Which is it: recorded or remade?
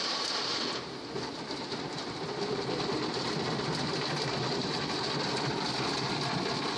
recorded